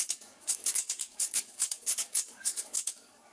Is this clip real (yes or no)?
no